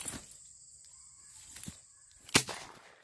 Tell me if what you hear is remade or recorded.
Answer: recorded